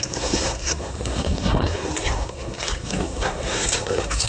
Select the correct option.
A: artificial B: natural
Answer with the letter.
A